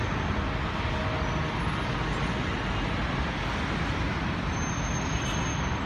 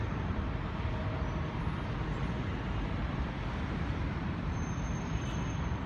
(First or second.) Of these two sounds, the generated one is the second